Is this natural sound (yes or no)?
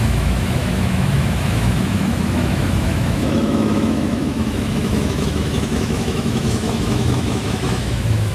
no